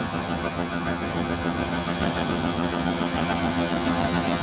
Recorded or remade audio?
remade